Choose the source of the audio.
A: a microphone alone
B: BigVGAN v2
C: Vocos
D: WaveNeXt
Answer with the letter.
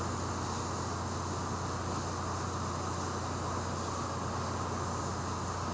A